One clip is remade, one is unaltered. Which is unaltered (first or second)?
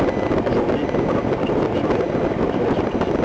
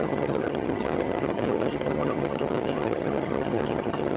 first